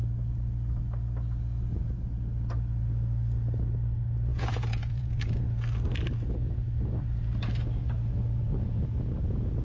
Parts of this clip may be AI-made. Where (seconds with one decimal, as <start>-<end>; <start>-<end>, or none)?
4.3-5.3